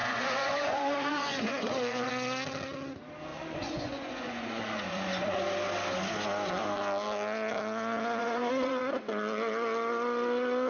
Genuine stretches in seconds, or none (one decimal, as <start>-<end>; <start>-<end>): 2.1-3.3; 5.4-8.2; 8.8-10.7